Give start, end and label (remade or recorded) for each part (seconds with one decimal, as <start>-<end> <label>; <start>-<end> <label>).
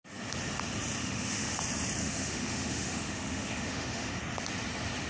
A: 0.0-1.0 recorded; 1.0-1.6 remade; 1.6-2.0 recorded; 2.0-4.2 remade; 4.2-5.1 recorded